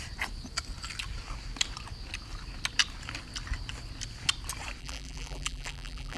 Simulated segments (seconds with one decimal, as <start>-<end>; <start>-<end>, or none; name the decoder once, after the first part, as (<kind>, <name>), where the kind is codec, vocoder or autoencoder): 4.8-6.2 (vocoder, BigVGAN v2)